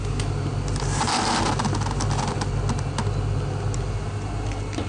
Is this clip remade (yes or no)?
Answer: no